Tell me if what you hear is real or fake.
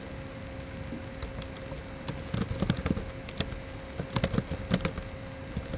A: real